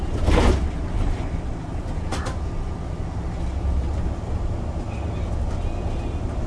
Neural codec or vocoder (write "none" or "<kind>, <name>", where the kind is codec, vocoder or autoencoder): none